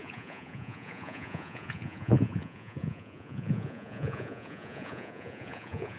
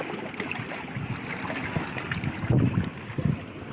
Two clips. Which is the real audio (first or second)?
second